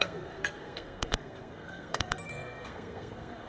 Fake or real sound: fake